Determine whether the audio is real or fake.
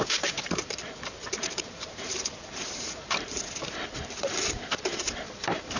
fake